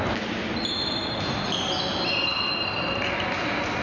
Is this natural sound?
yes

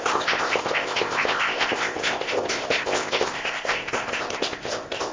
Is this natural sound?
no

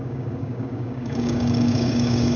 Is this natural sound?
no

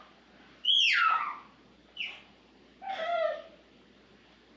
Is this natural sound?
yes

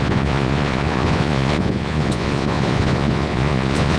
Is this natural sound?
no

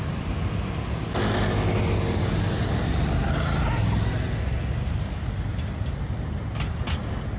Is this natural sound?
yes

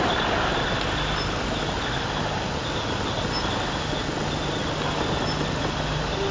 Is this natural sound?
yes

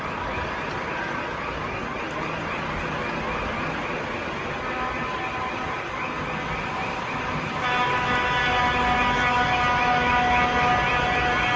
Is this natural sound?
yes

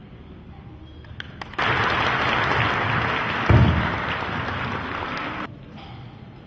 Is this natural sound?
yes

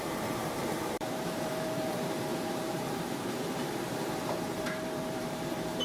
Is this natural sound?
no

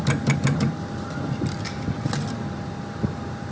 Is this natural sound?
yes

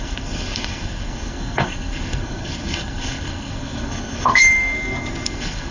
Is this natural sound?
no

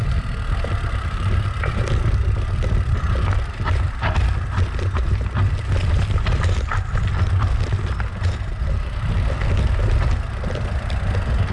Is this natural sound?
yes